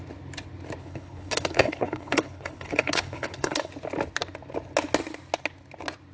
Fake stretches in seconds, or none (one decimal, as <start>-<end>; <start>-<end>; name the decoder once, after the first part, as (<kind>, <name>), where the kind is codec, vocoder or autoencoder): 0.8-3.7 (codec, HILCodec)